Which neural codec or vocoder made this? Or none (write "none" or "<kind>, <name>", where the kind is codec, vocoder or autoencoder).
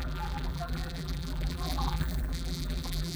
vocoder, BigVGAN v2